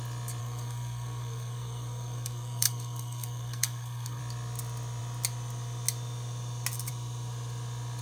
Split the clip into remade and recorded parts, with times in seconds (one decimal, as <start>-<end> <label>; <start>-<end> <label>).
0.0-0.4 recorded; 0.4-4.2 remade; 4.2-8.0 recorded